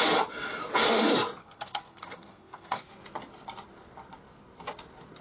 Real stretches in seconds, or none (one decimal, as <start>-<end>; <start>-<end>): 0.0-1.4; 2.9-5.2